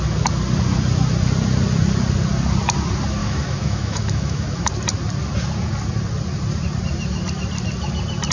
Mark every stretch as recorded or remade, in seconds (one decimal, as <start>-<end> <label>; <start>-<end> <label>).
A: 0.0-3.2 recorded; 3.2-4.7 remade; 4.7-8.3 recorded